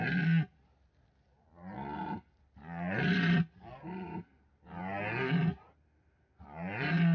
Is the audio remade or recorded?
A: recorded